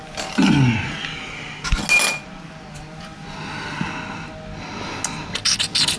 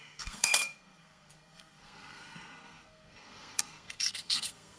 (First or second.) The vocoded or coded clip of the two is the second